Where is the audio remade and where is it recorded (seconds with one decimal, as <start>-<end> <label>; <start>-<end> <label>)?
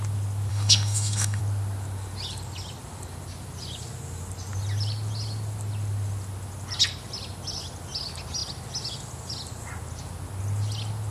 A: 0.0-0.5 recorded; 0.5-1.4 remade; 1.4-11.1 recorded